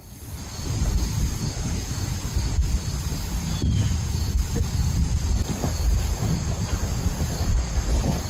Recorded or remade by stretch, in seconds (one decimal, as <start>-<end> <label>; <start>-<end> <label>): 0.0-8.3 recorded